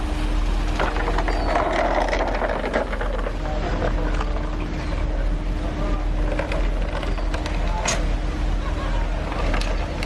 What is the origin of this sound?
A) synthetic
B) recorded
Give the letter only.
B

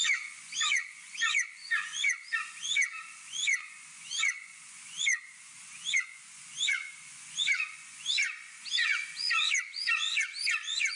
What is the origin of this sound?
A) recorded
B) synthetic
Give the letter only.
B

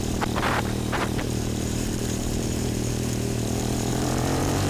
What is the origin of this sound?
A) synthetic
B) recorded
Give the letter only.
A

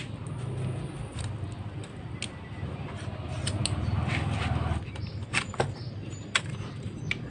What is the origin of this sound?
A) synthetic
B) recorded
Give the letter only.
B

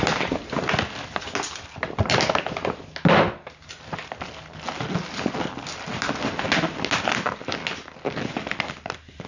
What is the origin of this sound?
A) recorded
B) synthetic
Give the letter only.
A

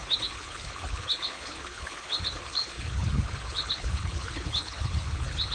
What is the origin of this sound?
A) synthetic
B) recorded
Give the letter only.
A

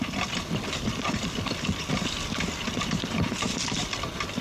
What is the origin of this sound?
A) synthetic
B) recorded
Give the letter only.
B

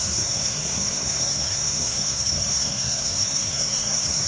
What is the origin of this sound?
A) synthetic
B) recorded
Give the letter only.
A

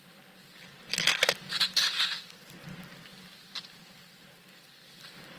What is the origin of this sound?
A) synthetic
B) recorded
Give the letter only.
B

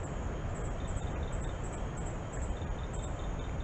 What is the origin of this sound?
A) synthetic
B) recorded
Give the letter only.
B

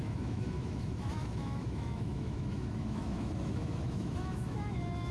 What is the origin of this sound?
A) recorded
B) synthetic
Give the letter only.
B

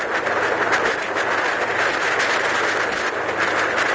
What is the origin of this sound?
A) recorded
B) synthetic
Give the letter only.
A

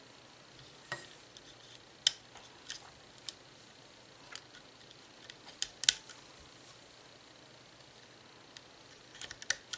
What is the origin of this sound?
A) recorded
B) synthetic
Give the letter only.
A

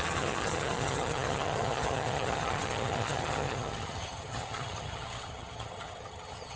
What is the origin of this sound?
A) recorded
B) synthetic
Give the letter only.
B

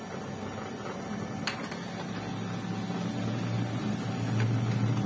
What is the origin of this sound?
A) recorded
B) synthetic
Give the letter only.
A